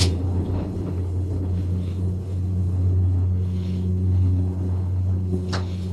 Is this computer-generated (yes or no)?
yes